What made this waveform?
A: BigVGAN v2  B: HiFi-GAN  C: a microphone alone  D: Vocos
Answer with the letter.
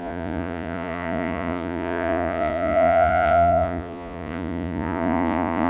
D